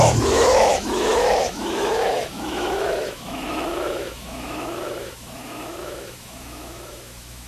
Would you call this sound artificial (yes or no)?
yes